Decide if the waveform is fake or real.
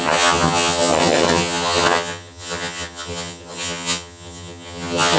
fake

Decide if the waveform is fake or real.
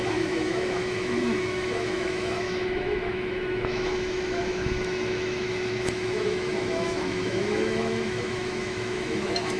fake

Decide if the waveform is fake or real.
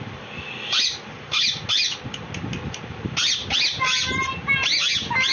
real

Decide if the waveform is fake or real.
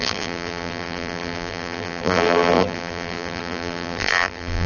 fake